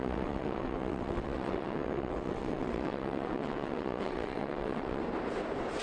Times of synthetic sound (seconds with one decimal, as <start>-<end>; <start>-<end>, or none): 0.0-5.0